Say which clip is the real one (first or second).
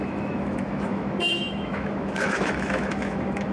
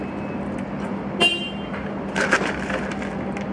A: second